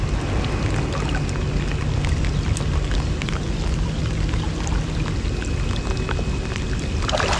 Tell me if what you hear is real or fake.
real